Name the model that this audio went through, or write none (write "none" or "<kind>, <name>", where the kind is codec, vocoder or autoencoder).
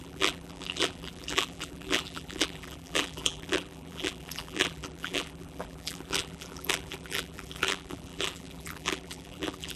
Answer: vocoder, BigVGAN v2